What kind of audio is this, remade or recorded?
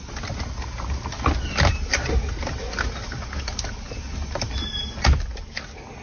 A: recorded